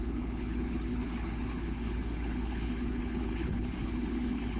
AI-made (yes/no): yes